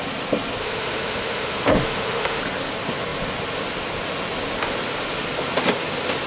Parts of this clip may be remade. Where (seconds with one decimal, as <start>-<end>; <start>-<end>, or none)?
0.6-2.4